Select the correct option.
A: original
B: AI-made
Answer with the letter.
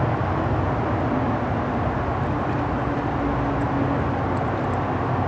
A